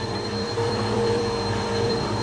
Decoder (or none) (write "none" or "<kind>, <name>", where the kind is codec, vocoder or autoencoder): vocoder, BigVGAN v2